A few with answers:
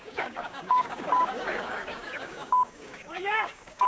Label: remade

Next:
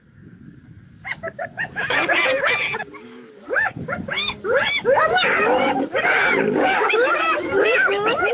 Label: remade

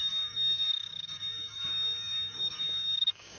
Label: remade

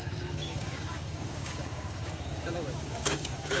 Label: remade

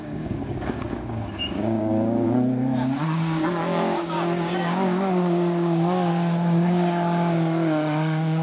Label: remade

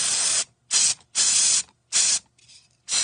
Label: recorded